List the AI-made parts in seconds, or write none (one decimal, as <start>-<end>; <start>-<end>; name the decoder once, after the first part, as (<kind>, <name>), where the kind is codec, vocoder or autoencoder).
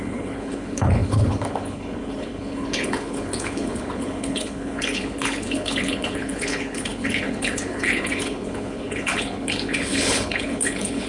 0.0-11.1 (codec, HILCodec)